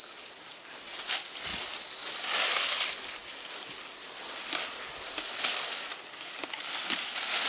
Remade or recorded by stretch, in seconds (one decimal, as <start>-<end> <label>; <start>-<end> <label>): 0.0-7.5 recorded